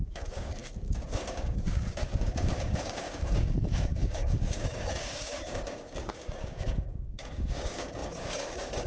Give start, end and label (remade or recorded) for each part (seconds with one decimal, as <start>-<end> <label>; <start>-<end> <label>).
0.0-8.9 remade